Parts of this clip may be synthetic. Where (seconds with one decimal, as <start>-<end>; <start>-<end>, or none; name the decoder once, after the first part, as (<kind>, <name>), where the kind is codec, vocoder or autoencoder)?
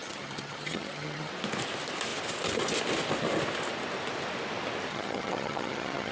0.0-1.3 (vocoder, HiFi-GAN); 4.9-6.1